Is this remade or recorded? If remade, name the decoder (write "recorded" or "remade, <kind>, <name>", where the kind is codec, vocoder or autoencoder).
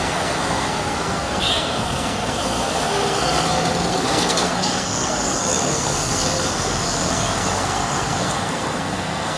remade, codec, SNAC